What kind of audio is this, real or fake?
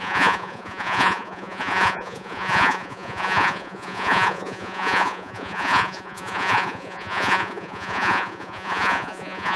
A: fake